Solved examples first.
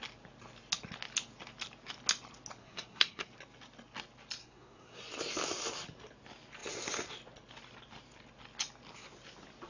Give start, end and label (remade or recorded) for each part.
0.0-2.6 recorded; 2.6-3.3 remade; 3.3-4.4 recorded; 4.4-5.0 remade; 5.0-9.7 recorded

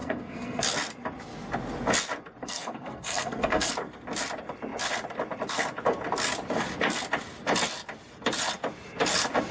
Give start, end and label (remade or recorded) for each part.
0.0-0.6 remade; 0.6-2.4 recorded; 2.4-3.7 remade; 3.7-9.5 recorded

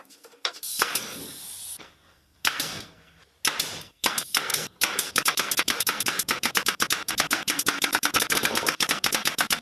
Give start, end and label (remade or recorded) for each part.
0.0-1.2 remade; 1.2-1.8 recorded; 1.8-3.2 remade; 3.2-3.8 recorded; 3.8-9.6 remade

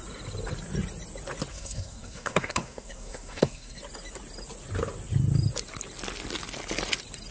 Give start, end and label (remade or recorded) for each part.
0.0-1.5 recorded; 1.5-3.8 remade; 3.8-7.3 recorded